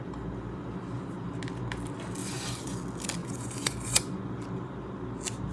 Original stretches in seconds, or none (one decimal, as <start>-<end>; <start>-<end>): 0.0-2.2; 2.8-3.2; 4.3-5.5